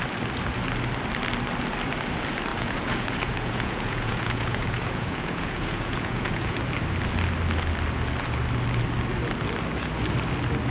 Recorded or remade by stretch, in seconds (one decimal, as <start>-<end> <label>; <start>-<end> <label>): 0.0-2.5 recorded; 2.5-6.6 remade; 6.6-10.7 recorded